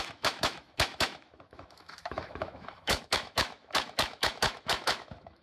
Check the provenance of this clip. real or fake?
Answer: fake